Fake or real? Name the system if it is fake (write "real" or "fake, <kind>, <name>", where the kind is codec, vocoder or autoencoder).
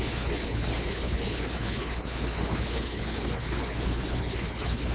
fake, codec, HILCodec